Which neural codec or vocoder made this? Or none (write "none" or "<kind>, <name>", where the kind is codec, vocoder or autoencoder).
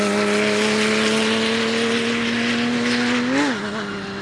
none